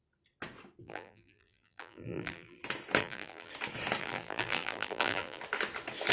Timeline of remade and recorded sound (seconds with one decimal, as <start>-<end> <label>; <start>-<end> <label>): 0.0-0.8 recorded; 0.8-2.6 remade; 2.6-3.0 recorded; 3.0-3.5 remade; 3.5-4.0 recorded; 4.0-5.4 remade; 5.4-6.1 recorded